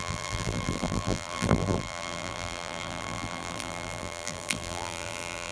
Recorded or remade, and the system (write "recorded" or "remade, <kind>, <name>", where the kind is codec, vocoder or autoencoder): remade, vocoder, BigVGAN v2